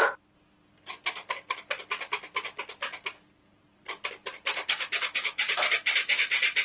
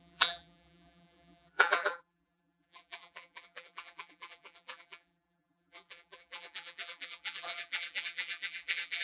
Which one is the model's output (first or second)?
second